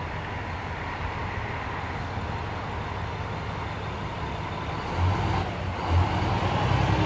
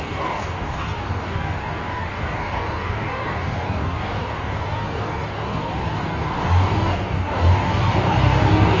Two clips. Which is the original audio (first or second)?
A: first